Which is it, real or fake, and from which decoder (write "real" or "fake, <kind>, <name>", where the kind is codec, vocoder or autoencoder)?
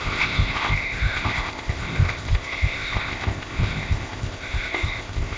fake, codec, ZipCodec